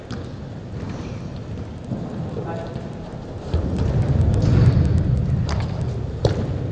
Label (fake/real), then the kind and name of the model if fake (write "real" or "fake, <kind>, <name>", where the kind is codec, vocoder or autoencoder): real